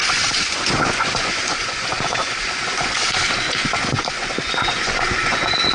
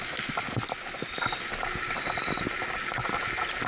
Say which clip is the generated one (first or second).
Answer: first